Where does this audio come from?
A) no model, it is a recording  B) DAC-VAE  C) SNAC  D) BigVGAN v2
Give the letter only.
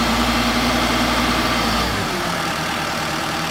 D